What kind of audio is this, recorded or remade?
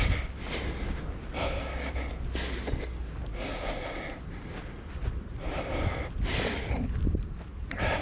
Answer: recorded